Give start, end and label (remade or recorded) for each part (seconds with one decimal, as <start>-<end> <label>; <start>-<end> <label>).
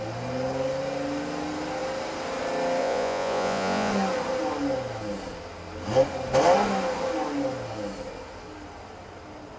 0.0-2.8 recorded; 2.8-3.9 remade; 3.9-9.6 recorded